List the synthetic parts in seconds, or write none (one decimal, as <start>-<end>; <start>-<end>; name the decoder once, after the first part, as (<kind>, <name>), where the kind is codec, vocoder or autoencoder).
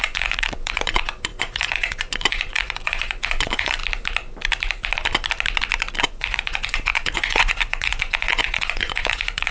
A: 0.0-3.8 (vocoder, Vocos); 6.0-9.5